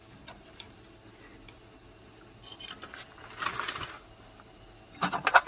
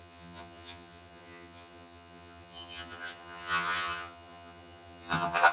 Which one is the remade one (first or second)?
second